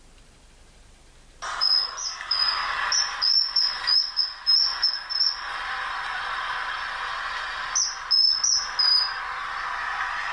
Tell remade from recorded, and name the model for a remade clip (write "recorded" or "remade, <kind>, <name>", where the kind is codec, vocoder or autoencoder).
recorded